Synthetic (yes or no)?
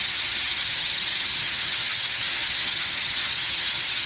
yes